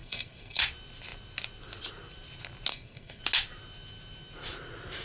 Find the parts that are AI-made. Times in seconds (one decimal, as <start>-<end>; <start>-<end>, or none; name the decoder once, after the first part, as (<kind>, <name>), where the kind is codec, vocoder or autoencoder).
0.0-0.6 (codec, SNAC); 2.7-3.2